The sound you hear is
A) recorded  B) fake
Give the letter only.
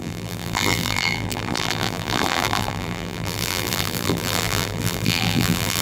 B